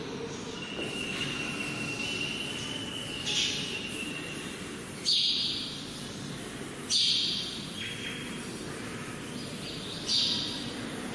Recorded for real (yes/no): yes